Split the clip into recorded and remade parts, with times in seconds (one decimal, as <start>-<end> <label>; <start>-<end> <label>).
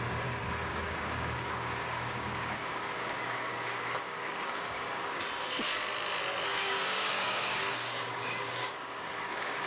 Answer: 0.0-0.7 recorded; 0.7-5.2 remade; 5.2-6.5 recorded; 6.5-9.7 remade